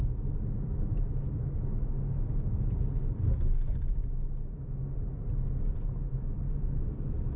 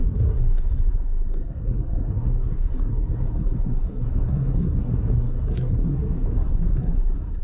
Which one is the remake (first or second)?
second